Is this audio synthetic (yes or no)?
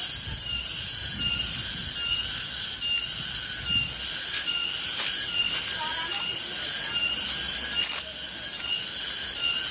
no